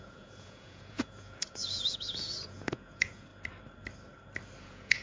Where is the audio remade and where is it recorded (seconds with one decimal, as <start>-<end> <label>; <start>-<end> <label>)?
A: 0.0-3.3 remade; 3.3-4.6 recorded; 4.6-5.0 remade